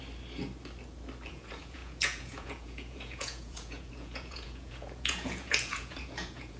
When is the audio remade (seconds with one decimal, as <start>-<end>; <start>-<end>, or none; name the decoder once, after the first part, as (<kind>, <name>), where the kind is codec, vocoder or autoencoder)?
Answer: 1.3-6.6 (vocoder, Vocos)